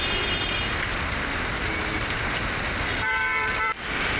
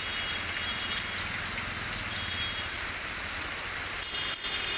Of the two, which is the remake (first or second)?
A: first